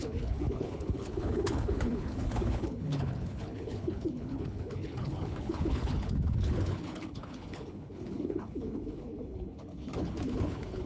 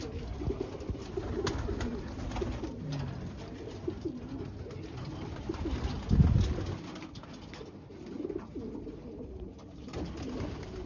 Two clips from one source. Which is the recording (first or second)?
second